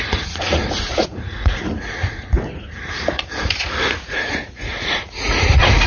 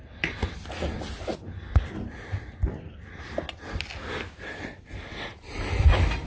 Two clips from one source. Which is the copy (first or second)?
first